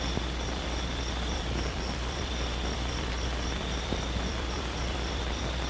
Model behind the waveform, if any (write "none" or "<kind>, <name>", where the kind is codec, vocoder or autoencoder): vocoder, BigVGAN v2